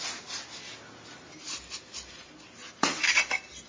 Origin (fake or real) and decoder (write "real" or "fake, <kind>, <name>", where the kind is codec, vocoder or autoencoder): real